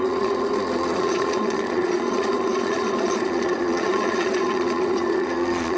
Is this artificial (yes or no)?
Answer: yes